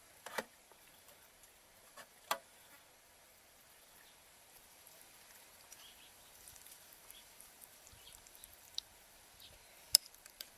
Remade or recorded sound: remade